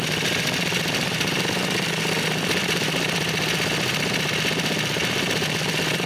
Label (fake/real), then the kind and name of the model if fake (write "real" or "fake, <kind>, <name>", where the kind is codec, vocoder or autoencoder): real